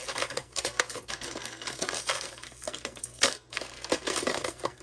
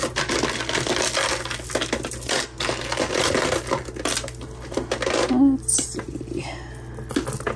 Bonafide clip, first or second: second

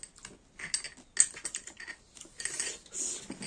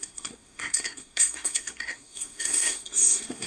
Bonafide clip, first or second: first